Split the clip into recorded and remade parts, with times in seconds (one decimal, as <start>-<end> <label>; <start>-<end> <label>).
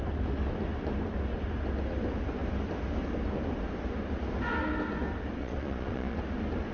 0.0-5.4 recorded; 5.4-6.2 remade; 6.2-6.7 recorded